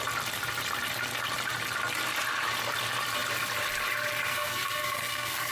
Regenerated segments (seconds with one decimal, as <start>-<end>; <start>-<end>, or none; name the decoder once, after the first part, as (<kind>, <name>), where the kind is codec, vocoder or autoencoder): 4.3-5.5 (codec, SNAC)

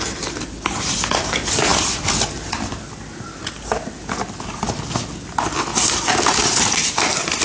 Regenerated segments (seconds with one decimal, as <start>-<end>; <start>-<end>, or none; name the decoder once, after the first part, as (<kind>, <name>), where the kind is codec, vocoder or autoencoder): none

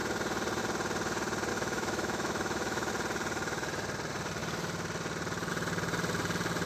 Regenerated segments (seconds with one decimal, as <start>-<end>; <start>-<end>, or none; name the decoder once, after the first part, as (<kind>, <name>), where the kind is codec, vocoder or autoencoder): 1.5-2.9 (autoencoder, DAC-VAE)

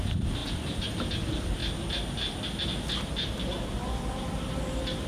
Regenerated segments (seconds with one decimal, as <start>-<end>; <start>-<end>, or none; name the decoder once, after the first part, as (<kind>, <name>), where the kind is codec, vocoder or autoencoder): none

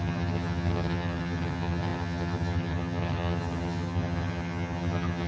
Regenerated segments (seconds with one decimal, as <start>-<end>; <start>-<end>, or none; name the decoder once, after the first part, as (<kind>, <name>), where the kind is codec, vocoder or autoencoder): 0.0-5.3 (vocoder, HiFi-GAN)